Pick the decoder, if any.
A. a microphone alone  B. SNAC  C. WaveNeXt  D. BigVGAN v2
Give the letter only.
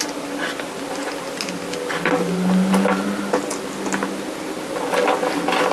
A